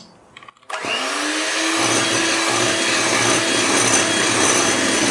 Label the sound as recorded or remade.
recorded